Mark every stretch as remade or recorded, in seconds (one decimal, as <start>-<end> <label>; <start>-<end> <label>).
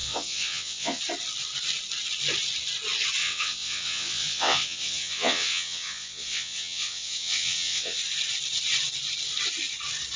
0.0-1.0 remade; 1.0-3.2 recorded; 3.2-8.0 remade; 8.0-10.2 recorded